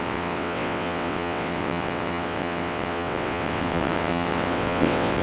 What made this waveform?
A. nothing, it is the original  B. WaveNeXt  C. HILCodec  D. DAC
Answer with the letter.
B